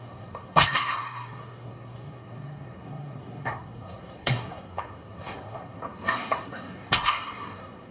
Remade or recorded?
remade